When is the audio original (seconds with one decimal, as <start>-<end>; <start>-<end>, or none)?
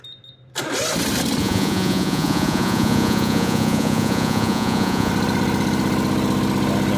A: 0.0-1.4; 5.1-7.0